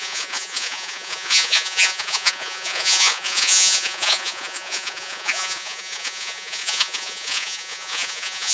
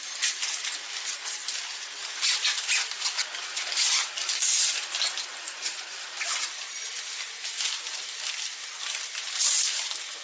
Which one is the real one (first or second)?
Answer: second